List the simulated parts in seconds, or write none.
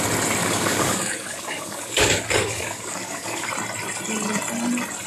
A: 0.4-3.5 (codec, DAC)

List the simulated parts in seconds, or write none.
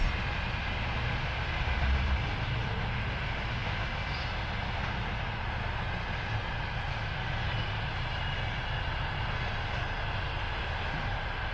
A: none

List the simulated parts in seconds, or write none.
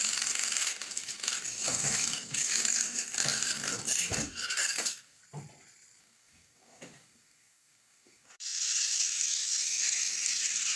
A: 0.0-5.2 (codec, DAC); 6.0-10.8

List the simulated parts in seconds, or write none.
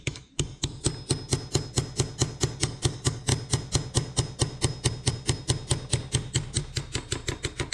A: 0.0-0.9 (codec, DAC); 2.6-3.3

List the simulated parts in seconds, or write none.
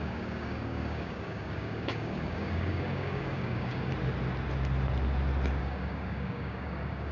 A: 0.0-3.9 (codec, DAC); 5.6-7.1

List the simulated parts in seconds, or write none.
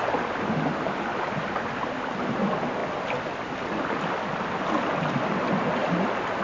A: none